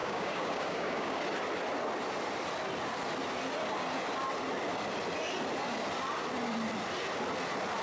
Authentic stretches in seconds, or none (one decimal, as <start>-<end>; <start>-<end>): 1.2-7.8